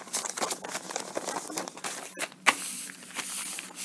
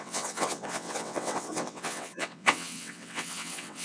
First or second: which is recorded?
first